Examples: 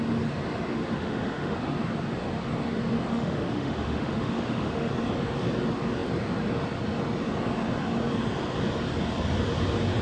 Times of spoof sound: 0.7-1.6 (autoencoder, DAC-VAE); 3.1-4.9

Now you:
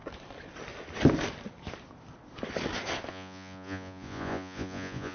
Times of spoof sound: 3.1-5.1 (vocoder, Vocos)

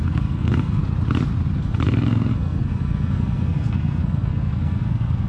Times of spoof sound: 0.0-0.8 (codec, SNAC); 1.6-5.3

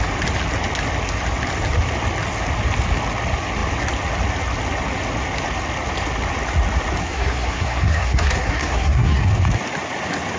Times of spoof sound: 7.0-9.3 (codec, SNAC)

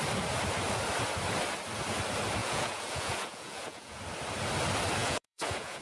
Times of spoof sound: 2.4-4.0 (vocoder, Vocos); 5.0-5.8

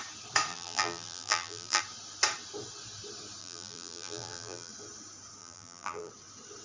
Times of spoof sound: 0.5-1.8 (vocoder, BigVGAN v2); 3.4-4.7; 5.4-6.1